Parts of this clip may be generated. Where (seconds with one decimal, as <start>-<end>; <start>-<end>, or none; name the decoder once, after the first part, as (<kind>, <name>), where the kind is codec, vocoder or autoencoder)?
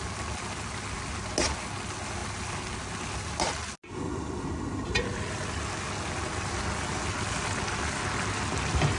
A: none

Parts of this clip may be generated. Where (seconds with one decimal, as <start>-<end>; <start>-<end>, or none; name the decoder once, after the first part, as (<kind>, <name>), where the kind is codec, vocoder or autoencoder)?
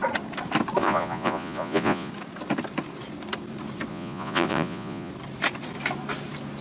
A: 0.8-2.1 (vocoder, Vocos); 3.9-5.1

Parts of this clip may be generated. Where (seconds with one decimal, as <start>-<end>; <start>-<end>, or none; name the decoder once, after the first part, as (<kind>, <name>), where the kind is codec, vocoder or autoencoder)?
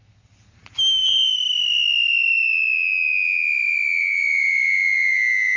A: none